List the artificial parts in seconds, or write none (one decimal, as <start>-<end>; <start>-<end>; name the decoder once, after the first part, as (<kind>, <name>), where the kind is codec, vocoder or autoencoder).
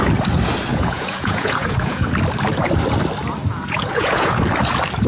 0.7-2.1 (vocoder, Vocos); 3.5-4.4